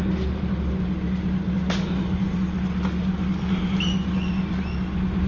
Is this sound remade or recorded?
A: recorded